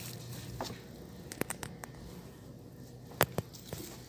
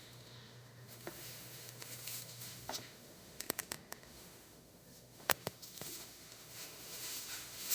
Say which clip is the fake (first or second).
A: second